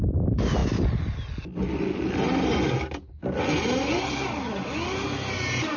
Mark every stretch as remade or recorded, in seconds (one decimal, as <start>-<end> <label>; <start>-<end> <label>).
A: 0.0-5.8 recorded